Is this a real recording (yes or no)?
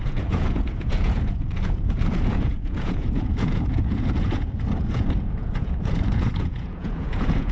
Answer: no